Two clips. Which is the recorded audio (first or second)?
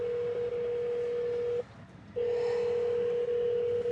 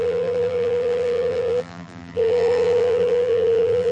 first